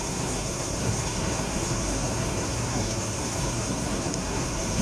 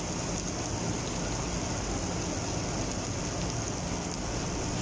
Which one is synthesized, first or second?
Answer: first